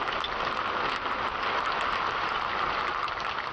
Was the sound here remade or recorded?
recorded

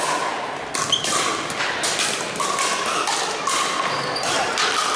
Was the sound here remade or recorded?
recorded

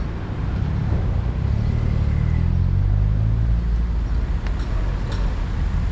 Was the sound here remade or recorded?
recorded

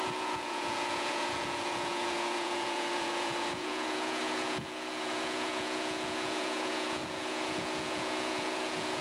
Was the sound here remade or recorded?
remade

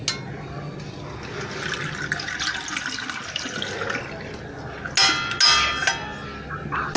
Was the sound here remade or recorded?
recorded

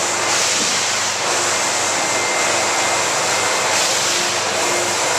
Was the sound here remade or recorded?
recorded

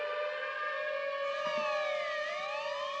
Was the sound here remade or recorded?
recorded